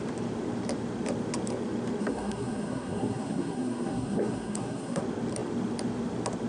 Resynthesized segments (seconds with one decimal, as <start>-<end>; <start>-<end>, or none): 2.0-5.0

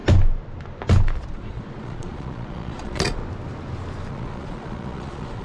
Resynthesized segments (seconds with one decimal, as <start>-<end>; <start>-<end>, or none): 1.3-3.2; 4.1-5.4

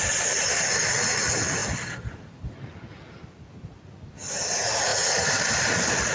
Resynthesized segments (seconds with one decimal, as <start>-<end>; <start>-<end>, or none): 4.9-6.1

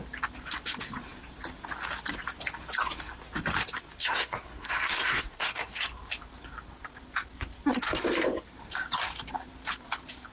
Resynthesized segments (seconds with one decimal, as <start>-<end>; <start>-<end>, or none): 4.0-5.8

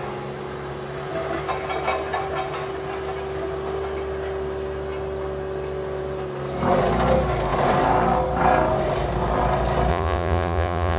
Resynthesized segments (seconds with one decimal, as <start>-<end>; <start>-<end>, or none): 9.9-11.0

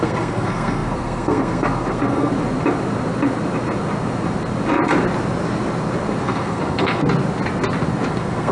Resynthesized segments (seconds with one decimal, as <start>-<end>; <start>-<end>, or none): 0.0-2.3; 6.2-7.0; 8.1-8.5

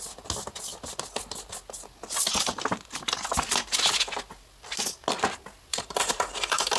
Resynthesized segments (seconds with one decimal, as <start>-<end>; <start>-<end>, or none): 5.7-6.8